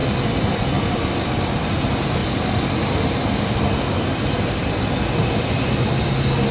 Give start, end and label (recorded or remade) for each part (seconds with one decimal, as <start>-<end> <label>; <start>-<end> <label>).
0.0-6.5 recorded